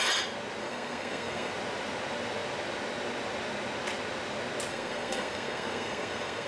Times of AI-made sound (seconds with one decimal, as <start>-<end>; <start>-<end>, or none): 0.6-1.5; 4.7-6.5